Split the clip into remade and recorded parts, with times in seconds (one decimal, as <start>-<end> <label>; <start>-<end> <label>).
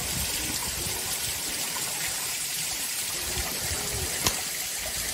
0.0-0.6 recorded; 0.6-3.7 remade; 3.7-5.1 recorded